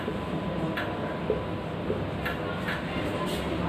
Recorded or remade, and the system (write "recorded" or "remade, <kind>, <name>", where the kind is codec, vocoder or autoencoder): recorded